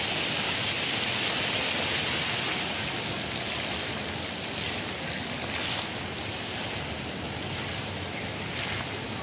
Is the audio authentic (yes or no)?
yes